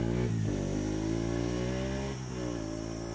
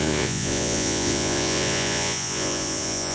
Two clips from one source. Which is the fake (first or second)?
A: second